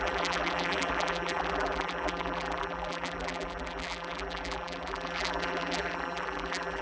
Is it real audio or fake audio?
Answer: fake